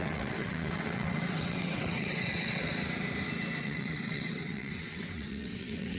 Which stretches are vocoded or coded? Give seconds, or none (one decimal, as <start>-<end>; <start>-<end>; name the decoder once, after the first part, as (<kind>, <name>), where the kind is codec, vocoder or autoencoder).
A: 0.0-2.7 (vocoder, WaveNeXt); 3.6-6.0

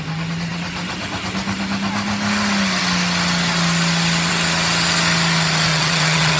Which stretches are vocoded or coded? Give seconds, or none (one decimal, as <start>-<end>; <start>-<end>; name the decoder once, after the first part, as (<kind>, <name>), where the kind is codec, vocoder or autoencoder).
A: 5.7-6.4 (vocoder, WaveNeXt)

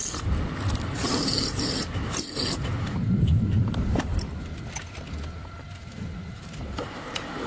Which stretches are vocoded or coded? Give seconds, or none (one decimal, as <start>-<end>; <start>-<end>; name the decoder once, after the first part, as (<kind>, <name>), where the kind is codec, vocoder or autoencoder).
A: 0.7-4.1 (vocoder, BigVGAN v2); 5.6-7.5